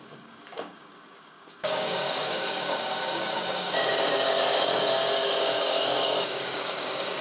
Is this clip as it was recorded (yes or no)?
no